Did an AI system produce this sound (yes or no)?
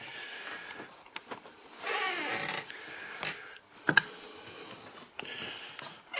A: no